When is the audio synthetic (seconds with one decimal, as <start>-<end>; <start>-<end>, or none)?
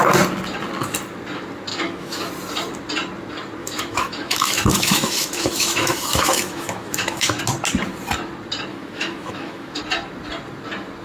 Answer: 1.7-2.3; 3.6-7.4; 8.7-9.8